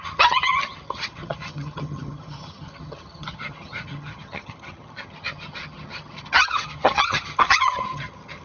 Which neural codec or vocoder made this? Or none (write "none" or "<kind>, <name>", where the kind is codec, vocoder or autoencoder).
vocoder, HiFi-GAN